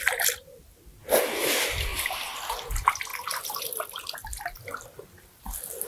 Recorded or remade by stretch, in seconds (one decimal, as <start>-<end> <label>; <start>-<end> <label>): 0.0-5.9 recorded